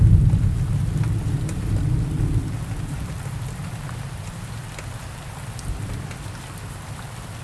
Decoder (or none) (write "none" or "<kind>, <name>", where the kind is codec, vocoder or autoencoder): none